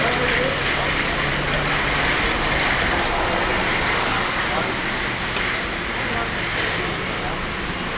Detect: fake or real real